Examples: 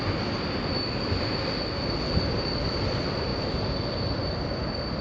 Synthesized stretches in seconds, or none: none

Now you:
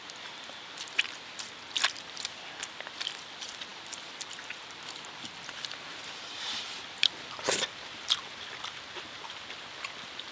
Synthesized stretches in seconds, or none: 0.0-10.3 (vocoder, BigVGAN v2)

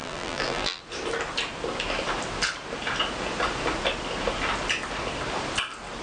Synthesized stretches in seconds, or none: 0.0-0.8 (vocoder, BigVGAN v2)

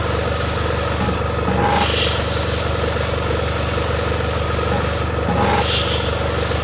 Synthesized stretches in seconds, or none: none

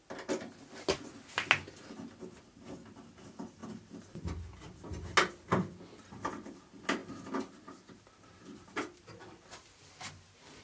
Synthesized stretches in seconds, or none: 3.6-4.2 (vocoder, BigVGAN v2)